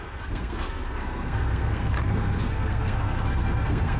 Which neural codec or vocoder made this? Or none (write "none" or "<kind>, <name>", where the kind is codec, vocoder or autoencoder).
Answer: codec, SNAC